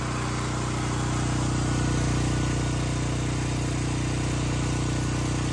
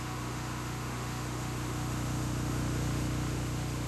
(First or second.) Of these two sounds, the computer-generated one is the second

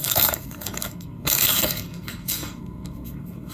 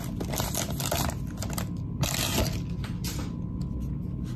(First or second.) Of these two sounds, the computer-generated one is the first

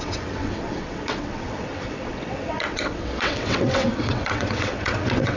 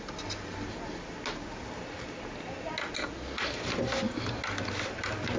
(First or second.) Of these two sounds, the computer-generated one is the first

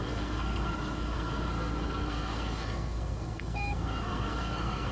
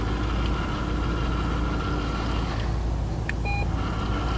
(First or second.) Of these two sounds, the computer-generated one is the first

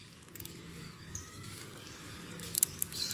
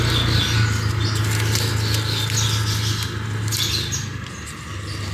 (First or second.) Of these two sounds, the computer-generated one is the first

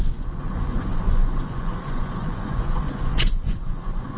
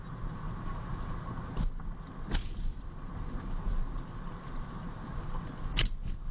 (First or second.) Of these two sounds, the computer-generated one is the first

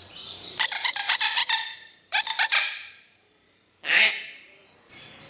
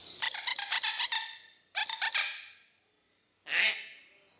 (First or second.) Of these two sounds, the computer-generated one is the first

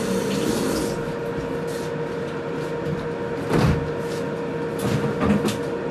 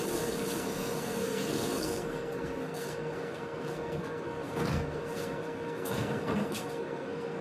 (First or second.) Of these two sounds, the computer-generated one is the second